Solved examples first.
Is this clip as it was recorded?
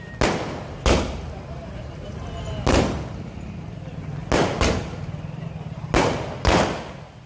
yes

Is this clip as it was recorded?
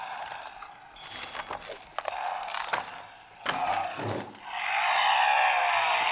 yes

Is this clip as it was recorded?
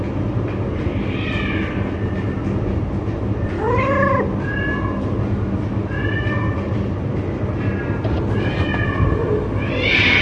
yes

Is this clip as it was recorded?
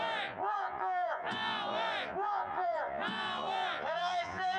no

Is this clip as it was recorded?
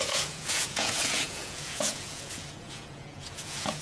no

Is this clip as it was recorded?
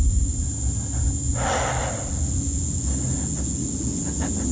yes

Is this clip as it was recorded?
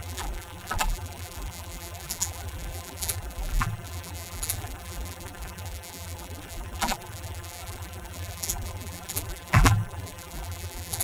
no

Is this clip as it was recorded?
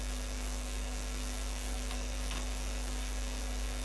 no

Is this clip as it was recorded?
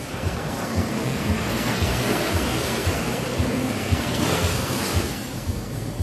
no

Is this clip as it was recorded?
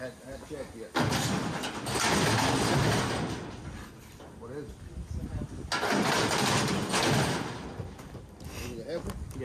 yes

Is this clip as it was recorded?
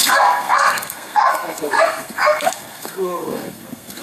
no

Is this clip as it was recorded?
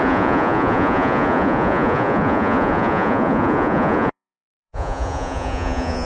no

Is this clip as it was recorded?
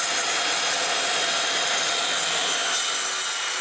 yes